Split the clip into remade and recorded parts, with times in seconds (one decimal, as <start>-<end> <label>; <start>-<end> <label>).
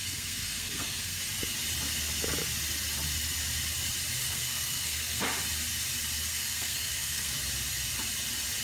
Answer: 0.0-1.2 remade; 1.2-4.2 recorded; 4.2-5.2 remade; 5.2-6.3 recorded; 6.3-7.3 remade; 7.3-8.6 recorded